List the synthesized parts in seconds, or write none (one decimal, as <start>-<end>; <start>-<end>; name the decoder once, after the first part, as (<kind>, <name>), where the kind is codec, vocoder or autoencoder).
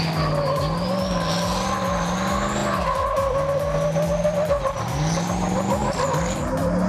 none